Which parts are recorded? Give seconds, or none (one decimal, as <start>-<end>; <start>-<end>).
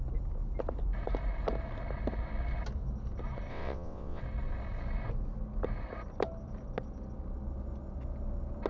0.0-3.5; 4.2-8.7